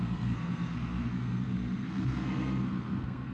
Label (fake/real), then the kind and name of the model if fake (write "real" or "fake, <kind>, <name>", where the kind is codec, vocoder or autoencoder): fake, codec, SNAC